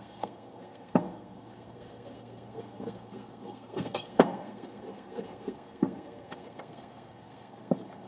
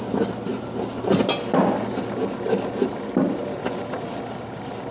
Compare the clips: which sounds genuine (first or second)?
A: second